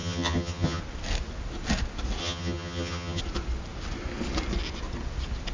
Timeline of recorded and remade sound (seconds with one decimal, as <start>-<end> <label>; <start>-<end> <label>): 0.0-0.8 remade; 0.8-2.2 recorded; 2.2-3.2 remade; 3.2-5.5 recorded